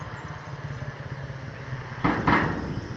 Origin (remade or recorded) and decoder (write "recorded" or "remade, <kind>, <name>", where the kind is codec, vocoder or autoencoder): recorded